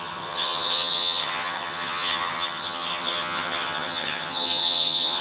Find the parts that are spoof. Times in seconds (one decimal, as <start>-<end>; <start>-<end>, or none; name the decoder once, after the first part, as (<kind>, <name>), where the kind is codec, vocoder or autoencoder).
0.0-5.2 (vocoder, HiFi-GAN)